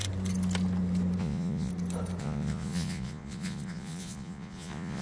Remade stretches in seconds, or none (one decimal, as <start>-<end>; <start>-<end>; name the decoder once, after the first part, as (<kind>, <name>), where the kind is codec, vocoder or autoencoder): 1.2-1.7 (vocoder, Vocos); 2.2-5.0